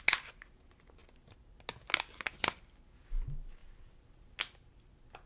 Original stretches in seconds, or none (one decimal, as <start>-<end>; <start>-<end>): 0.0-5.3